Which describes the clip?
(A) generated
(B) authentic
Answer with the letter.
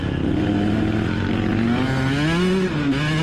B